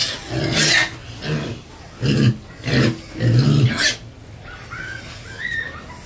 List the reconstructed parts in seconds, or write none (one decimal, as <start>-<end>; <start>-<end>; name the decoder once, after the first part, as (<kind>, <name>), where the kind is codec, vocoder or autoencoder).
none